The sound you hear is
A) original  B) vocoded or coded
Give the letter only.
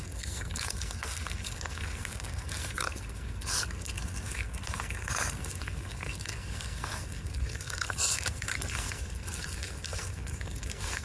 B